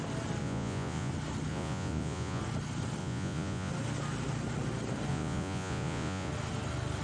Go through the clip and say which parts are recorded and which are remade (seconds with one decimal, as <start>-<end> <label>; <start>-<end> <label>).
0.0-0.4 recorded; 0.4-1.1 remade; 1.1-1.5 recorded; 1.5-2.4 remade; 2.4-3.0 recorded; 3.0-3.7 remade; 3.7-5.1 recorded; 5.1-6.3 remade; 6.3-7.0 recorded